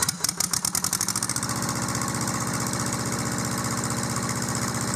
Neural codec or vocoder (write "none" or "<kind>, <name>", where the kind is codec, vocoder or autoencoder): none